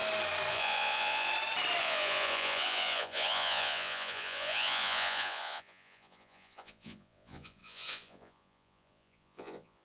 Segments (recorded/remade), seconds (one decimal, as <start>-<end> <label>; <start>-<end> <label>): 0.0-0.5 recorded; 0.5-1.3 remade; 1.3-1.8 recorded; 1.8-9.8 remade